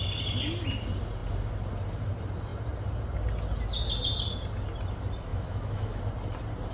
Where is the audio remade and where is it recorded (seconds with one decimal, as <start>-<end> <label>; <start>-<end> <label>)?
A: 0.0-5.3 recorded; 5.3-6.0 remade; 6.0-6.7 recorded